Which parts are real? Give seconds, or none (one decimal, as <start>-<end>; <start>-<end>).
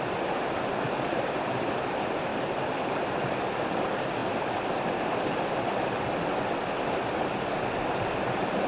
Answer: 0.0-2.3; 3.4-8.7